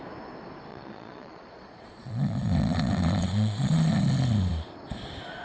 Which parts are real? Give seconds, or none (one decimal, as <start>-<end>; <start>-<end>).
0.0-0.7; 3.9-5.4